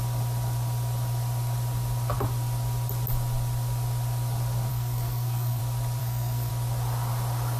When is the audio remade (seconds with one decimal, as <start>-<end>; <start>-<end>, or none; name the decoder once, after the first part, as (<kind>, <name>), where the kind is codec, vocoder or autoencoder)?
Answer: 4.7-5.6 (codec, SNAC); 6.0-6.5

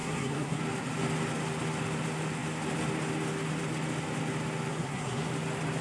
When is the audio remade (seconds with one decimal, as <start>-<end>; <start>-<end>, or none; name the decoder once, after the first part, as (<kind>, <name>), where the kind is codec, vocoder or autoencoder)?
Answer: 0.0-0.6 (codec, SNAC); 4.7-5.3

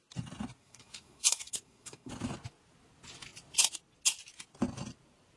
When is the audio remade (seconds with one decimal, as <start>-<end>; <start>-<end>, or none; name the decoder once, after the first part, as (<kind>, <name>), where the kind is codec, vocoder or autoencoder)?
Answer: 0.6-2.1 (codec, SNAC)

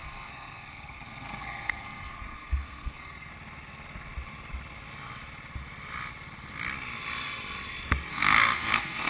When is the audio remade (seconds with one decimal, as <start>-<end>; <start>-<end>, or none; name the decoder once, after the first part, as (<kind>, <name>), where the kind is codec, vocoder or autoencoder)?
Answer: 0.0-3.3 (codec, SNAC); 8.1-9.1

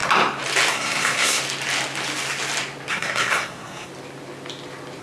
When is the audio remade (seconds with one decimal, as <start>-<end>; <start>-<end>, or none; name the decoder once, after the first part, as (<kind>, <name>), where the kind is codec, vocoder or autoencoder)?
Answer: 0.7-1.4 (codec, SNAC); 2.9-3.9